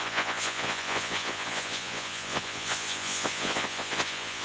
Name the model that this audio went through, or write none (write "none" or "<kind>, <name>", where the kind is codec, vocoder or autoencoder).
vocoder, Vocos